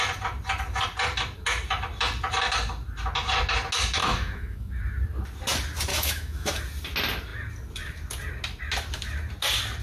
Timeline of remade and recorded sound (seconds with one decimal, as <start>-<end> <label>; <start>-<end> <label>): 0.0-4.0 recorded; 4.0-4.7 remade; 4.7-5.9 recorded; 5.9-6.6 remade; 6.6-9.8 recorded

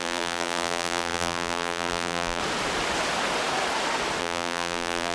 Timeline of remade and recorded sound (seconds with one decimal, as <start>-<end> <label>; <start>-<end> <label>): 0.0-2.4 remade; 2.4-4.2 recorded; 4.2-5.1 remade

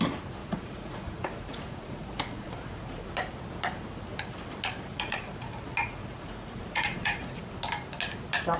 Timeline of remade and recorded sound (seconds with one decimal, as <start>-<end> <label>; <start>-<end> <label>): 0.0-0.4 recorded; 0.4-2.5 remade; 2.5-4.9 recorded; 4.9-5.5 remade; 5.5-6.0 recorded; 6.0-7.4 remade; 7.4-8.6 recorded

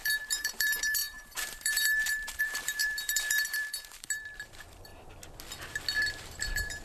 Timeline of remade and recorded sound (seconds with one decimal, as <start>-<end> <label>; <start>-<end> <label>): 0.0-4.9 remade; 4.9-6.1 recorded; 6.1-6.8 remade

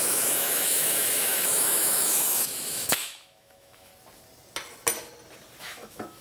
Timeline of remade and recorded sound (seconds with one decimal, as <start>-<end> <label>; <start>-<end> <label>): 0.0-3.9 remade; 3.9-5.6 recorded; 5.6-6.2 remade

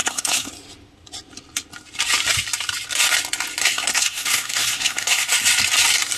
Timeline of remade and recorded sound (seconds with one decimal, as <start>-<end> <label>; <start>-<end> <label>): 0.0-0.5 remade; 0.5-3.6 recorded; 3.6-5.3 remade; 5.3-6.2 recorded